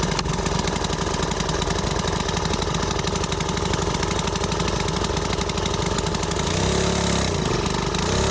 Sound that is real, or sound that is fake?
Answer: real